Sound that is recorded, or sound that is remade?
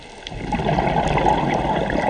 recorded